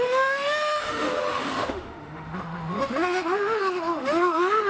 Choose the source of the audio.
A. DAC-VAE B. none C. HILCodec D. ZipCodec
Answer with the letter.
A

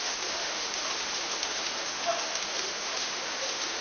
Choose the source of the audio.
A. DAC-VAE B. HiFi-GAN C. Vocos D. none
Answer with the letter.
A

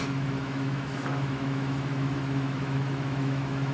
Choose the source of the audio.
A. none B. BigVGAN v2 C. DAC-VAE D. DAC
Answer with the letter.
C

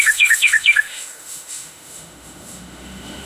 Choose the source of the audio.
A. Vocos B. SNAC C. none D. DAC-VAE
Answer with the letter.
D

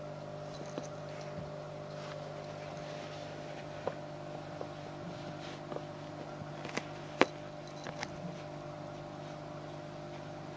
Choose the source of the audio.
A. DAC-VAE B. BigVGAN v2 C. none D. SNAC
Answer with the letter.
C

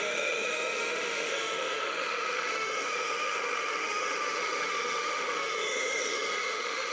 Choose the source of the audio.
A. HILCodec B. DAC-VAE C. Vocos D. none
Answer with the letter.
B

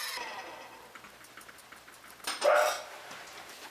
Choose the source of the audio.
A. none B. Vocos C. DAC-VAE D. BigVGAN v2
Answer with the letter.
A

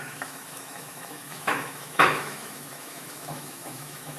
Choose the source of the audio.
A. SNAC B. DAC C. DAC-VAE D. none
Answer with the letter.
C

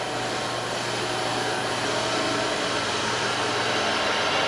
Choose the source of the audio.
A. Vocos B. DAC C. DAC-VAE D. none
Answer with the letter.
D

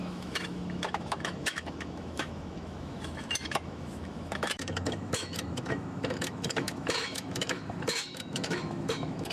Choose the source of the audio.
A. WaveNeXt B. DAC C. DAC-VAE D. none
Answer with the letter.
C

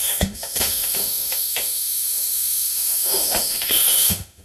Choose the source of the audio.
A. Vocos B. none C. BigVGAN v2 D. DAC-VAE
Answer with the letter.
D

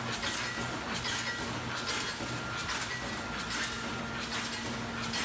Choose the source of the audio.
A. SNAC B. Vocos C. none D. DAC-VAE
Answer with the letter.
C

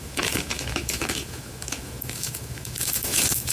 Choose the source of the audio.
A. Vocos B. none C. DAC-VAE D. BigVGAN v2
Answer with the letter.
C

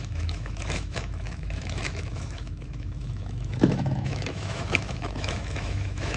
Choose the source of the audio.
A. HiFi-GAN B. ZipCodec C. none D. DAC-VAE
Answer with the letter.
D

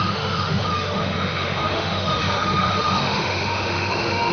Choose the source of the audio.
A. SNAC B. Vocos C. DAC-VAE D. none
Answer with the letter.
C